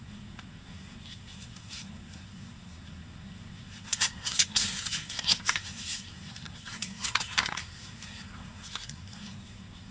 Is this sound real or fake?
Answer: fake